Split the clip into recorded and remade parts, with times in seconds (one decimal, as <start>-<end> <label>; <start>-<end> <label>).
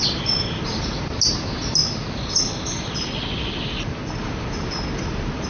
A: 0.0-5.5 recorded